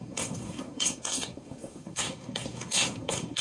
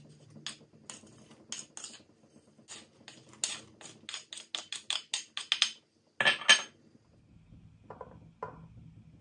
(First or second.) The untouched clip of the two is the second